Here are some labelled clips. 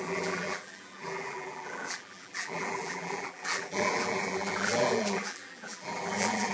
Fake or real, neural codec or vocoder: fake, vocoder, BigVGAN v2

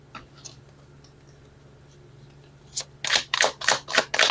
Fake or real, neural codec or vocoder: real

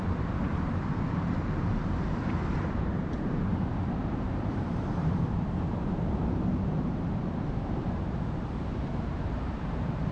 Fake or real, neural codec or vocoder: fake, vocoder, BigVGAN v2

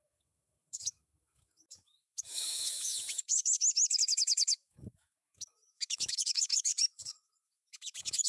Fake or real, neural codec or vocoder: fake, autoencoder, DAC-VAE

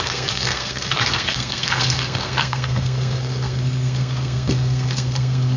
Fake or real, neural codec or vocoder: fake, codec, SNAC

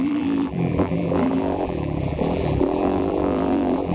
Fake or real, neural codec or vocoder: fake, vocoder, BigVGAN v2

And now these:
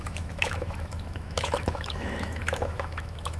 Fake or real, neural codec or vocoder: fake, autoencoder, DAC-VAE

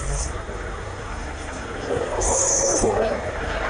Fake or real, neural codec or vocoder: fake, codec, SNAC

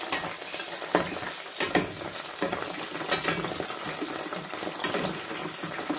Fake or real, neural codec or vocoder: real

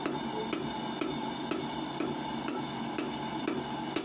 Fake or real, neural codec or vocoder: real